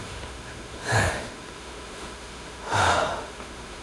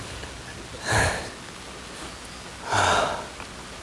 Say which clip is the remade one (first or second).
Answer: first